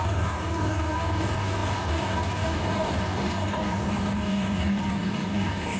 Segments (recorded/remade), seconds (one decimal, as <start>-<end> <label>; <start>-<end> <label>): 0.0-5.8 remade